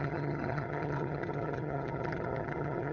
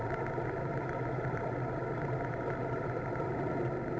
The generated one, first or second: first